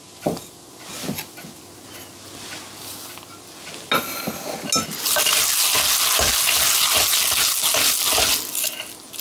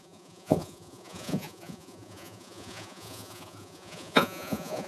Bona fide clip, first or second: first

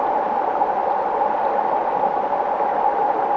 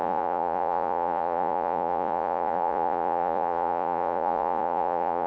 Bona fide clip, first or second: first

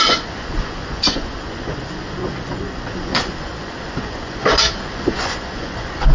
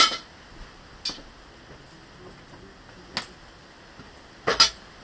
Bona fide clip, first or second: second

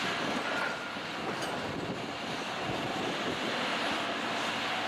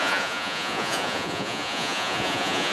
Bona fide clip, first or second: first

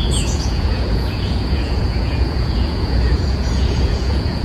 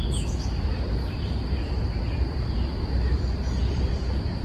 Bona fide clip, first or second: second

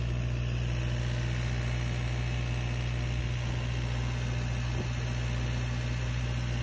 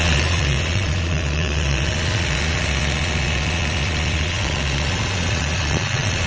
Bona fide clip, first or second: first